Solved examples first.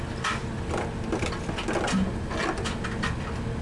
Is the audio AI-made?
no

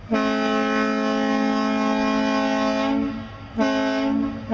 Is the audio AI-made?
no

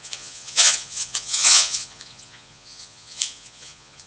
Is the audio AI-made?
yes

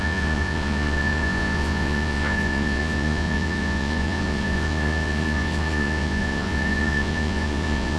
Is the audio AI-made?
yes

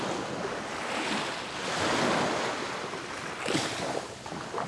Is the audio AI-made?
no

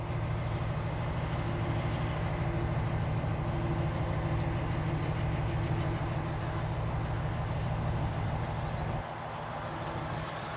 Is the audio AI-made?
no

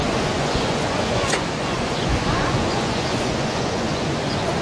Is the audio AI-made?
yes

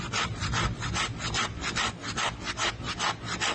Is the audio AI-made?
no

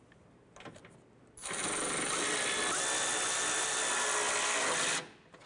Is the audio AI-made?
no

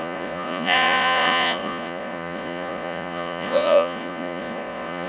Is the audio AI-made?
yes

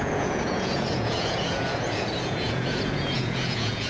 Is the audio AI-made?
yes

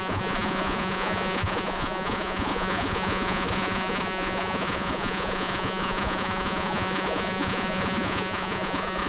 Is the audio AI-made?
yes